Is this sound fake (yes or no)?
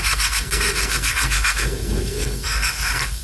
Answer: yes